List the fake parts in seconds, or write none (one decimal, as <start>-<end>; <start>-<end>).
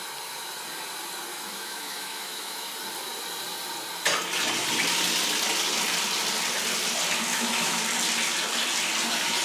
1.3-2.7; 7.3-7.8